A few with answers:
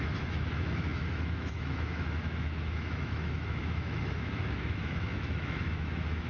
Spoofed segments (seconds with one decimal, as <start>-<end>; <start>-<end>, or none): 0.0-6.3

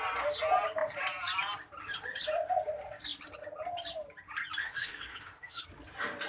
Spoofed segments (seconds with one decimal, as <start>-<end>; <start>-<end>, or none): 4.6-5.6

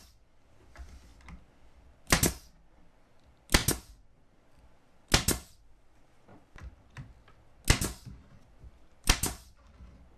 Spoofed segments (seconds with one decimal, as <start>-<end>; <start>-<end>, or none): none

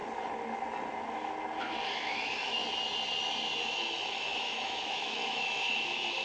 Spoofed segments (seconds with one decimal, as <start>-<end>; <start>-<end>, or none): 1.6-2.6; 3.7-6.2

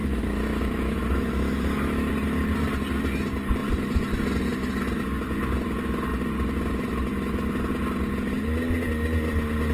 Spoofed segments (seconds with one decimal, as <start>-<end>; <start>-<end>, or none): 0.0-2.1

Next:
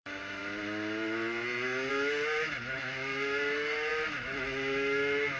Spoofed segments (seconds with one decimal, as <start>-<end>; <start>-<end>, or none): 0.0-0.4; 1.9-5.4

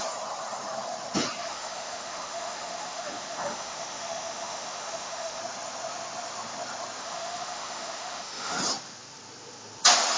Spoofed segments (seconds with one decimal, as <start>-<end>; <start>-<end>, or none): 1.4-5.4; 7.0-8.6